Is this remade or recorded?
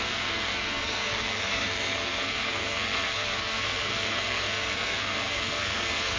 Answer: remade